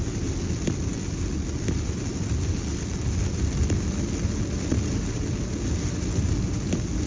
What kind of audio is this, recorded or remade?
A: recorded